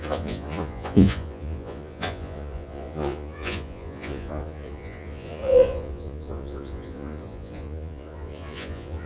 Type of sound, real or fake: fake